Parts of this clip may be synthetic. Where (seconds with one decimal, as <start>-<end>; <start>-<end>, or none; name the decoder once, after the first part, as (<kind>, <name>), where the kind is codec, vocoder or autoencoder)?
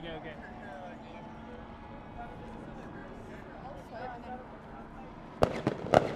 none